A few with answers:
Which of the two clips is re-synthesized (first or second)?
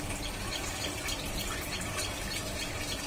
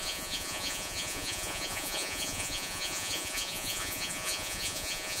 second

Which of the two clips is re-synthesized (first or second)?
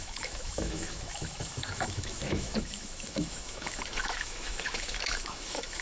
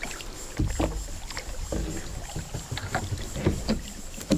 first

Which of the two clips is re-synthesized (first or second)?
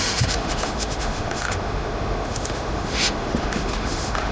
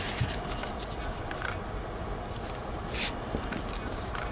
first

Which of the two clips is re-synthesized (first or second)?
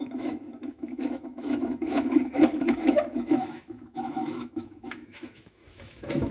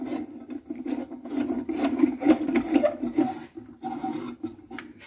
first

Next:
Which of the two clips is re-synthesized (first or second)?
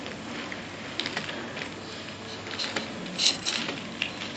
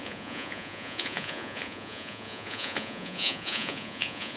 second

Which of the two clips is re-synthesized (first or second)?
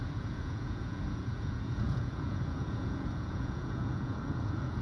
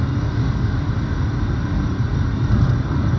first